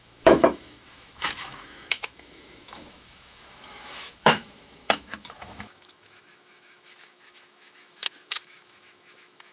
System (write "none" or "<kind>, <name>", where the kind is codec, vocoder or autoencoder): autoencoder, DAC-VAE